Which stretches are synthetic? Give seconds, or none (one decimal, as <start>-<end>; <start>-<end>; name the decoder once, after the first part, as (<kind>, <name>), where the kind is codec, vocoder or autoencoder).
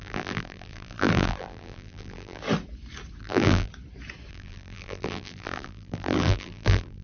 0.0-2.4 (vocoder, BigVGAN v2); 3.2-3.7; 4.3-7.0